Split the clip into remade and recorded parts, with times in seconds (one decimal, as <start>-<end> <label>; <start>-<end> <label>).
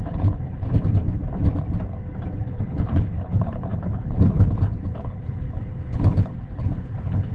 0.0-1.2 remade; 1.2-2.4 recorded; 2.4-7.3 remade